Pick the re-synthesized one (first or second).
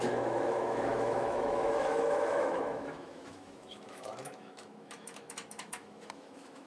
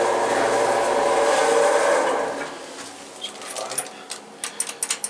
first